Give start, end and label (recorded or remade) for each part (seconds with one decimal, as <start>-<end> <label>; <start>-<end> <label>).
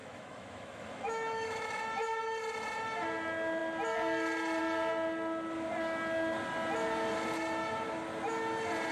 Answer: 0.0-1.8 remade; 1.8-8.9 recorded